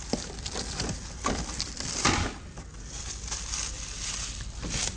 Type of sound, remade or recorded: recorded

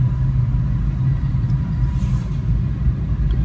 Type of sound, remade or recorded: recorded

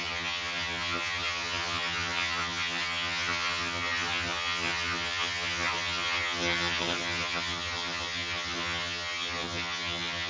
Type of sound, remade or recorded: remade